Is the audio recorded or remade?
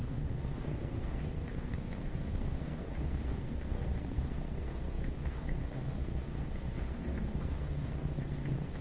remade